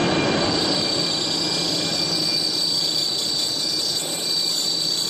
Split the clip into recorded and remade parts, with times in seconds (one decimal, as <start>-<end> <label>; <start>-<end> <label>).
0.0-1.0 remade; 1.0-5.1 recorded